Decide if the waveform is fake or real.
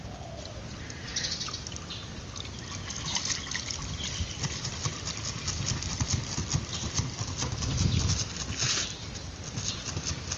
real